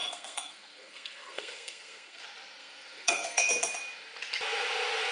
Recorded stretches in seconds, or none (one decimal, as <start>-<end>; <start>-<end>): 2.2-2.6; 3.5-5.1